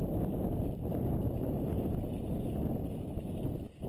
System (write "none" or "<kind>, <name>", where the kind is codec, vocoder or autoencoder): none